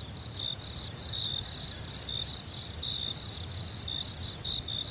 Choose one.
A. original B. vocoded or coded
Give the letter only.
A